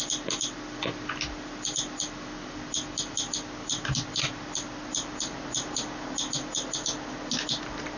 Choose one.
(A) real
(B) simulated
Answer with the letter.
A